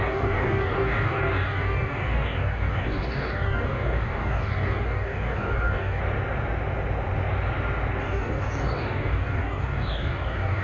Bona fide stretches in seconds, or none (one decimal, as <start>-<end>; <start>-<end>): 6.0-8.0